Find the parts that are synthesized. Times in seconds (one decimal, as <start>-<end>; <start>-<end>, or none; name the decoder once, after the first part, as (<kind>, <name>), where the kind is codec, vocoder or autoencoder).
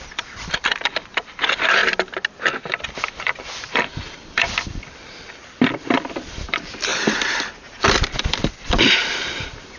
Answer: 0.0-1.8 (vocoder, BigVGAN v2); 2.6-6.9; 7.8-9.8